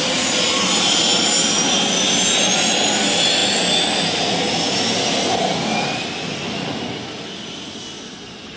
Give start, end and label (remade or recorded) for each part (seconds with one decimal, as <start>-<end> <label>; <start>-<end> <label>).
0.0-8.6 recorded